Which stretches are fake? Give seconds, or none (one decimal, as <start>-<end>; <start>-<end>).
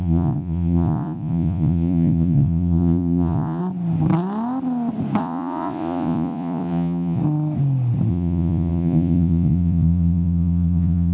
0.0-3.6; 5.2-7.2; 8.1-11.1